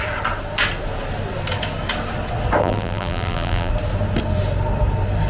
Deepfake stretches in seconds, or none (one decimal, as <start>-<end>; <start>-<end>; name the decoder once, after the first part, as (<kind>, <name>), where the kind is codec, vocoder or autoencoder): 2.6-3.7 (vocoder, BigVGAN v2)